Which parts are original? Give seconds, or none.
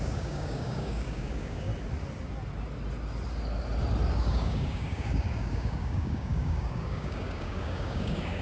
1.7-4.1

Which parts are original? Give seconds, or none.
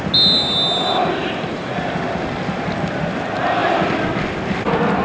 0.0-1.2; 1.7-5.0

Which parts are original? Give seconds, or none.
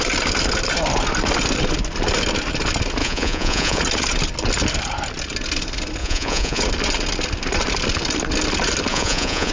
0.0-3.0; 3.8-6.0; 6.6-8.9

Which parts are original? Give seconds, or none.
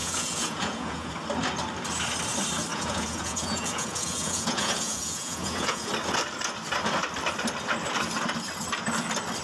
1.1-2.7; 5.9-9.4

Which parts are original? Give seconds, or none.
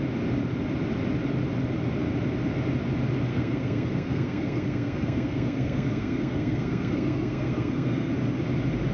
0.0-3.3; 8.1-8.9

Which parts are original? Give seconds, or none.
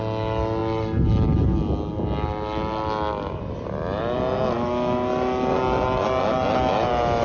0.0-7.2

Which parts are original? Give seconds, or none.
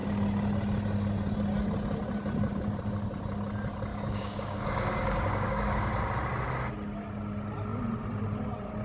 0.0-3.9; 5.9-8.8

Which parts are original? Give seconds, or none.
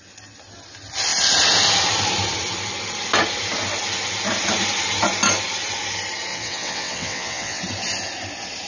0.0-6.3; 7.6-8.7